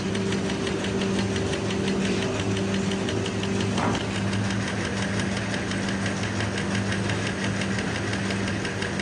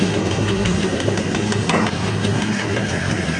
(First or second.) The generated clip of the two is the second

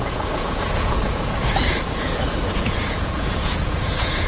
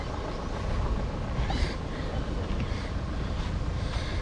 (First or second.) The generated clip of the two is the first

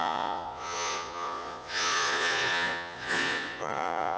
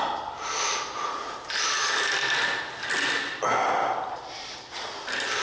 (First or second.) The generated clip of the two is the first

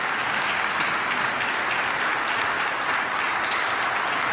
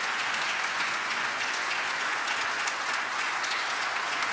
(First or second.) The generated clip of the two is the second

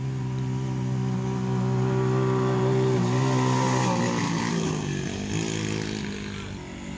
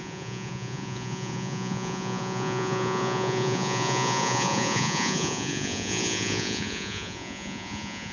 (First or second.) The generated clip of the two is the second